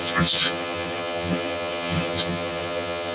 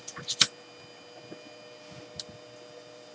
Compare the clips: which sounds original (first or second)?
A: second